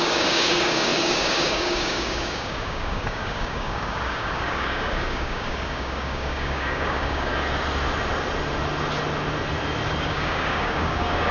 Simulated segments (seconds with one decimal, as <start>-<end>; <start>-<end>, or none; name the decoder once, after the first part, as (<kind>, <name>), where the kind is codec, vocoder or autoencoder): 0.0-7.3 (codec, DAC); 10.0-11.3